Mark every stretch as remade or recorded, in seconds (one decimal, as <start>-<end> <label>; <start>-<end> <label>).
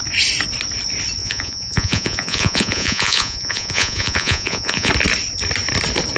0.0-1.2 recorded; 1.2-4.9 remade; 4.9-6.2 recorded